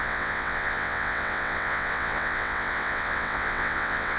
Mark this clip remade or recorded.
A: remade